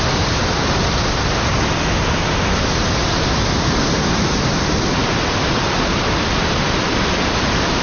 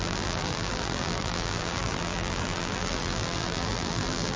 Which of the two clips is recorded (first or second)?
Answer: first